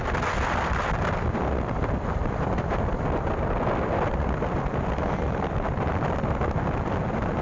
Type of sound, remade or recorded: recorded